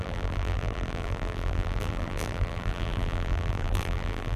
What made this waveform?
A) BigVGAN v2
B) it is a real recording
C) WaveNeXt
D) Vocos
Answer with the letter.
A